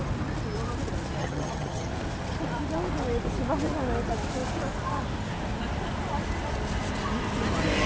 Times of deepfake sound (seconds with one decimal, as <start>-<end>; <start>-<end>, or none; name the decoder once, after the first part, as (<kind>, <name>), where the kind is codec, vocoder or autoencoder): 1.2-1.9 (vocoder, HiFi-GAN)